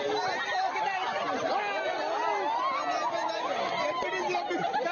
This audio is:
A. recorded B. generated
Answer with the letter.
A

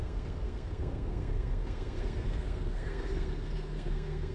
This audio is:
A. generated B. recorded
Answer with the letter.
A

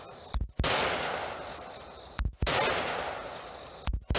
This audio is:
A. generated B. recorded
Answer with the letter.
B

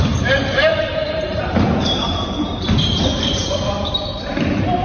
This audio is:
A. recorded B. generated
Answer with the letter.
B